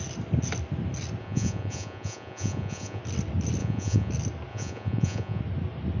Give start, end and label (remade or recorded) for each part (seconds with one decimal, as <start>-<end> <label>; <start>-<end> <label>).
0.0-1.2 recorded; 1.2-3.0 remade; 3.0-3.6 recorded; 3.6-4.1 remade; 4.1-4.5 recorded; 4.5-5.4 remade; 5.4-6.0 recorded